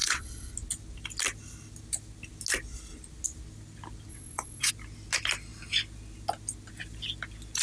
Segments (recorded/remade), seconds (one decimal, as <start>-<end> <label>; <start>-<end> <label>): 0.0-0.5 remade; 0.5-4.1 recorded; 4.1-4.7 remade; 4.7-7.6 recorded